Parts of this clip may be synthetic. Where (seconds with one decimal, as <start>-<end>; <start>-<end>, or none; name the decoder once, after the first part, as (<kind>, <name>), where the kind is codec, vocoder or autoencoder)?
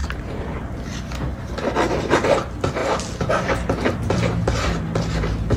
2.8-4.2 (vocoder, BigVGAN v2)